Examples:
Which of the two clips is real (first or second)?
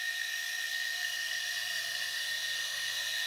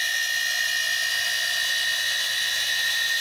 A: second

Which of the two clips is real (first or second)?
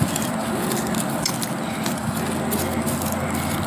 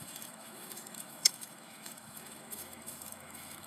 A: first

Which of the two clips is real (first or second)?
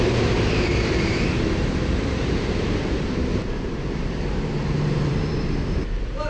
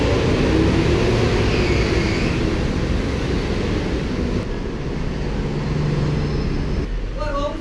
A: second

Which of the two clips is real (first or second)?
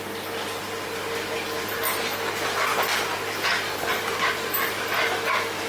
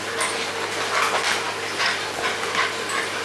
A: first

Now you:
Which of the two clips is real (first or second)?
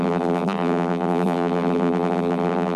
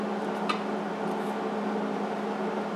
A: second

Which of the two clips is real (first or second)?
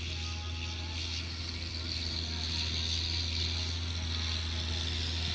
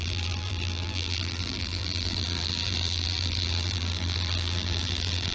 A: first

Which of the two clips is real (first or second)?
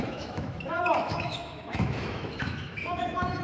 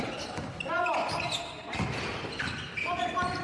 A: second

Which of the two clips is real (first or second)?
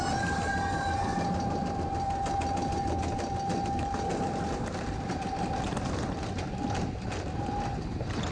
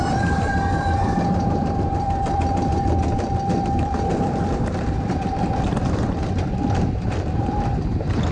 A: first